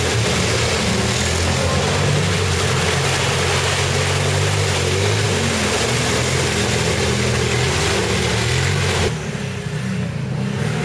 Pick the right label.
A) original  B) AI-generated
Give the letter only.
A